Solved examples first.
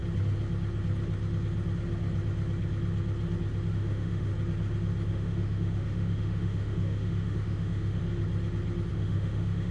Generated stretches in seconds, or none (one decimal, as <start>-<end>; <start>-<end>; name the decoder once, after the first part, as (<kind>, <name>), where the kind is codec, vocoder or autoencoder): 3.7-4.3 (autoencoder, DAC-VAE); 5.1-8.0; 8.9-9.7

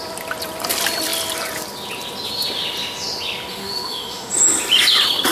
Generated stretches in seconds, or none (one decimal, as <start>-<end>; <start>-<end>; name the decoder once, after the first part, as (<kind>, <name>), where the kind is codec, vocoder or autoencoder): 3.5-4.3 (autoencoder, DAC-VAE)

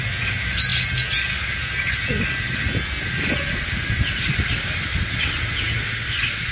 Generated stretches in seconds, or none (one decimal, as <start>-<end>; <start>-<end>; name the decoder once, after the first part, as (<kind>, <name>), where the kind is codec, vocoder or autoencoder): none

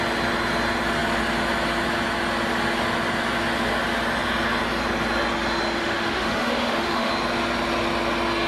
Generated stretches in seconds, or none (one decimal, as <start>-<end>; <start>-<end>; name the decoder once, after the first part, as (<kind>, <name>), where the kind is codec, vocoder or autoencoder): 5.8-7.1 (autoencoder, DAC-VAE)